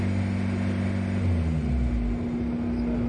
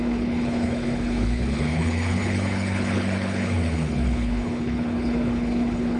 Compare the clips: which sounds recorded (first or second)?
first